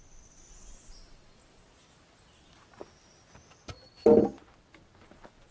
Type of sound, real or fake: real